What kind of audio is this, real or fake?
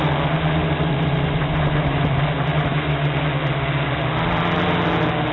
real